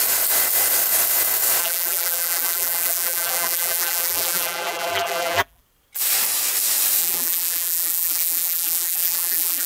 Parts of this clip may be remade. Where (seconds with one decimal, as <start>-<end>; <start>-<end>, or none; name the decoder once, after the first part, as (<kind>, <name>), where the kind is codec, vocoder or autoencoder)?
1.6-5.6 (vocoder, BigVGAN v2); 7.0-9.7